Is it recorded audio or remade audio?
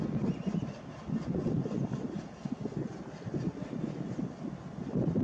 recorded